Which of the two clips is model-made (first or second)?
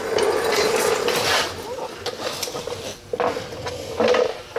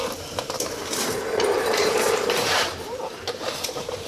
second